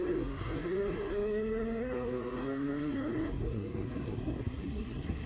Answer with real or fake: fake